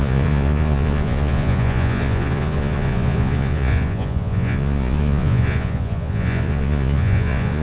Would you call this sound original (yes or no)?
no